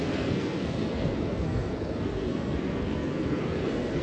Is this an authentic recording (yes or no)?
no